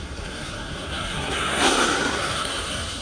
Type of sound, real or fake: fake